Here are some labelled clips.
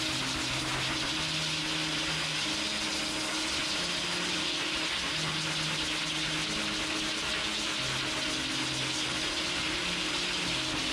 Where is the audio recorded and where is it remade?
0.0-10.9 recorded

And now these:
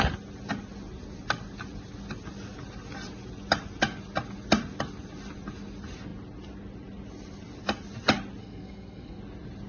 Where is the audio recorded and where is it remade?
0.0-8.4 recorded; 8.4-9.2 remade; 9.2-9.7 recorded

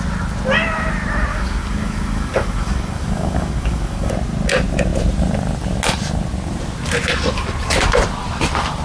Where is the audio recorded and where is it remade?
0.0-1.3 recorded; 1.3-4.1 remade; 4.1-8.8 recorded

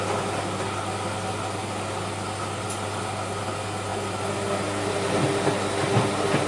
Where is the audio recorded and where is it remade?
0.0-6.5 recorded